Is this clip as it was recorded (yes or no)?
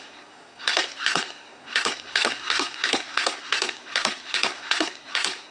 no